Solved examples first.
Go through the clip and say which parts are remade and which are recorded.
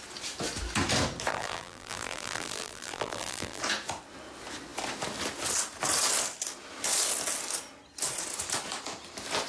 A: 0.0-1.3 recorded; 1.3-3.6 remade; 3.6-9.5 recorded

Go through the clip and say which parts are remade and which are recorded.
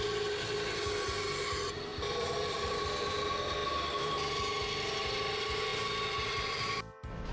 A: 0.0-1.9 recorded; 1.9-2.8 remade; 2.8-3.6 recorded; 3.6-4.3 remade; 4.3-7.3 recorded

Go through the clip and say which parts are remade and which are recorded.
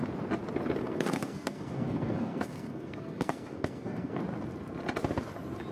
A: 0.0-0.8 recorded; 0.8-4.2 remade; 4.2-5.7 recorded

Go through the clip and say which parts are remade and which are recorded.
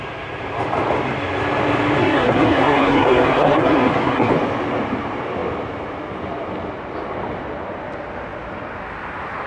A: 0.0-2.0 recorded; 2.0-4.3 remade; 4.3-9.5 recorded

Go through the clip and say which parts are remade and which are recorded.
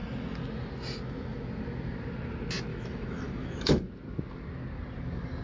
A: 0.0-2.7 recorded; 2.7-3.8 remade; 3.8-5.4 recorded